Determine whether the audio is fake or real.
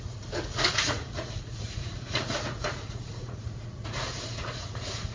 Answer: fake